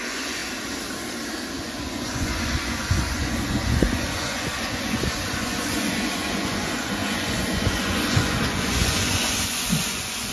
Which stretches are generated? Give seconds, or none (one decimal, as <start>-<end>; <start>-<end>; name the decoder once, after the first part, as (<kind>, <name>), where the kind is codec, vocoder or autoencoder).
0.0-0.4 (vocoder, Vocos); 1.6-10.3